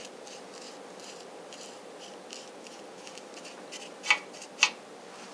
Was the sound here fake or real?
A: real